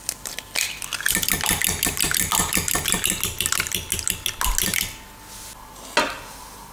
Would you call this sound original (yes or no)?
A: yes